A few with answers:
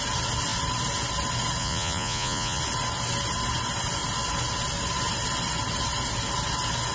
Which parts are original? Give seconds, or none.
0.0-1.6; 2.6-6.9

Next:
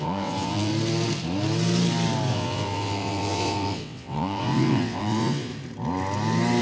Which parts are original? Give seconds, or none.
0.7-2.3; 5.5-6.6

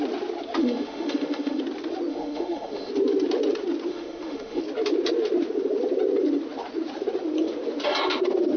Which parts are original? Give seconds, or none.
0.0-0.6; 1.6-2.1; 2.9-3.9; 4.6-8.6

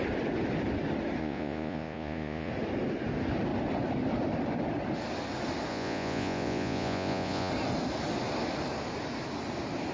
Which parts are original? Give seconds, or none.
0.0-1.2; 2.5-5.7; 7.5-9.9

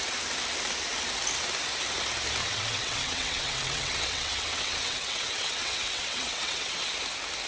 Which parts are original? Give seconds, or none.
0.0-2.4; 6.9-7.5

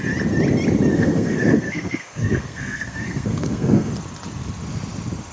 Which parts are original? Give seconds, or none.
0.0-0.9; 3.9-5.3